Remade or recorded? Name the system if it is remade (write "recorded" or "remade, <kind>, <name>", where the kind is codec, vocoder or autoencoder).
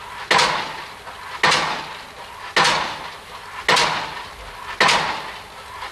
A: recorded